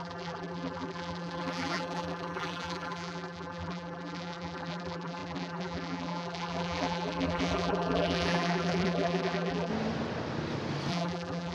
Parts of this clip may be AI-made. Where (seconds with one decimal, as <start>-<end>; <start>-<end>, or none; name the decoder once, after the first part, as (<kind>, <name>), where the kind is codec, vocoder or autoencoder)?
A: 0.0-9.7 (vocoder, BigVGAN v2); 10.9-11.5